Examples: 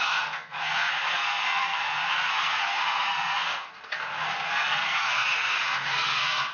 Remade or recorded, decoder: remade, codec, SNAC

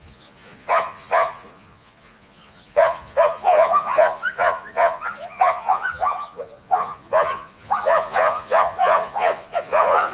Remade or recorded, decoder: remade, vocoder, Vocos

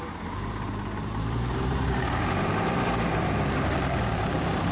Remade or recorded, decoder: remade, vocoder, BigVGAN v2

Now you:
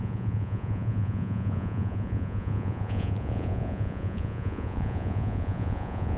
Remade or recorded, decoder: remade, vocoder, Vocos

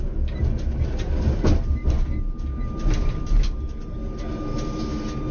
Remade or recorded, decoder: recorded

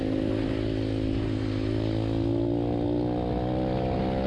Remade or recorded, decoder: recorded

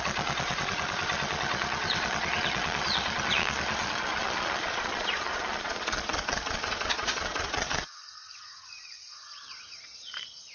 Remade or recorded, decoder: remade, vocoder, Vocos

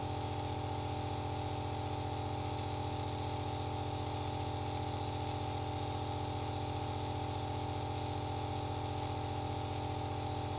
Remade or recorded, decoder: recorded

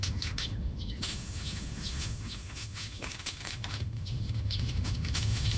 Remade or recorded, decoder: remade, autoencoder, DAC-VAE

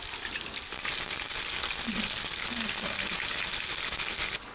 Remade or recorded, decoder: recorded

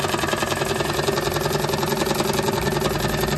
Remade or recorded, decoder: recorded